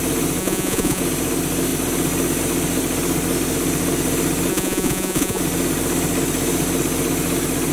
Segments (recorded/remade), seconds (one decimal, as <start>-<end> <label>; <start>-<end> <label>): 0.0-0.4 recorded; 0.4-1.0 remade; 1.0-4.5 recorded; 4.5-5.4 remade; 5.4-7.7 recorded